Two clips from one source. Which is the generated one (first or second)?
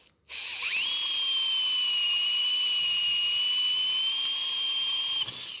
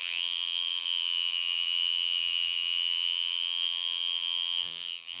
second